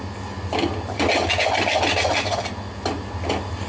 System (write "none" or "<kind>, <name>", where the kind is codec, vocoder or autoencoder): none